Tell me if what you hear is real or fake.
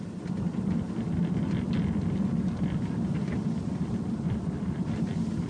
real